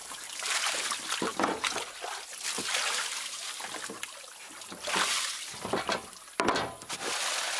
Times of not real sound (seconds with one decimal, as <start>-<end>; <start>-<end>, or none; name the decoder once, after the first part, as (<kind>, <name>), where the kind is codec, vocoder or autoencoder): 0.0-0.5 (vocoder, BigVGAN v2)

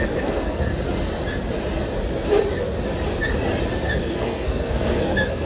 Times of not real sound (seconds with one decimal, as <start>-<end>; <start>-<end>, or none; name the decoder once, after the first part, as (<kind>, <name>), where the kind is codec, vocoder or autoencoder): 0.0-0.7 (codec, SNAC); 4.0-5.5

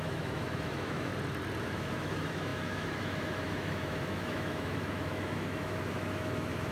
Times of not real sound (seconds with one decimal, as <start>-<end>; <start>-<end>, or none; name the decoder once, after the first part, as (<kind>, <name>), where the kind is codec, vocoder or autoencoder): 0.0-1.1 (autoencoder, DAC-VAE); 1.6-6.7

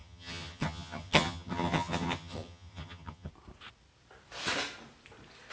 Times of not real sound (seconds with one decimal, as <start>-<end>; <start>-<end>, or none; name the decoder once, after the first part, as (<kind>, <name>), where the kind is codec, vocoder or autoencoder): 0.0-3.3 (vocoder, HiFi-GAN)

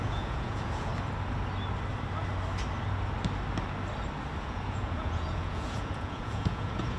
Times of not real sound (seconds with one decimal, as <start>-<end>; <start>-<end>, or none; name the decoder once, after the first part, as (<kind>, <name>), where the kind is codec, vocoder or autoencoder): 0.0-0.9 (vocoder, Vocos); 4.4-7.0

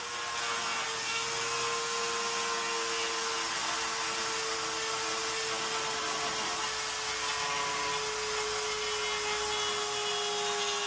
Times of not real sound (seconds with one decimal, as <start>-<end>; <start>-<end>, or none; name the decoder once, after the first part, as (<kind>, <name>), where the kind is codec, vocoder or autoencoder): none